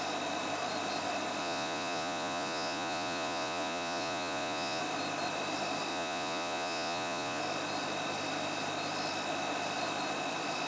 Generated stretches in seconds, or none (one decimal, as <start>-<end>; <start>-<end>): 1.4-4.8; 5.9-7.4